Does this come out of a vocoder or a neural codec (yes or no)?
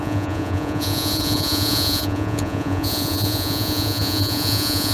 yes